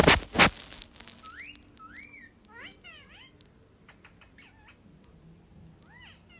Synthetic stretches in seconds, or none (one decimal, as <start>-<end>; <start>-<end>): none